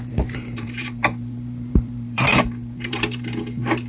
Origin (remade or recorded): remade